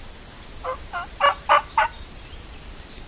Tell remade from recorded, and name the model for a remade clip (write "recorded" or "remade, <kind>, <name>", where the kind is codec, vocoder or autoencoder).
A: recorded